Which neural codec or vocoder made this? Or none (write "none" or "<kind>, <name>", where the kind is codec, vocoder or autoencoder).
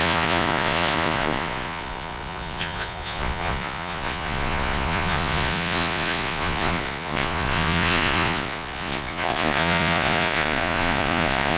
vocoder, Vocos